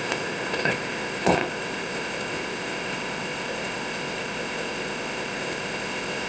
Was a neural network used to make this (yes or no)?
yes